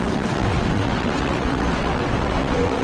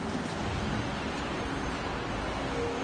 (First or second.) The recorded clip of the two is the second